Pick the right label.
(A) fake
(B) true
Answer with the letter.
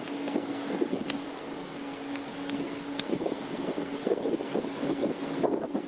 A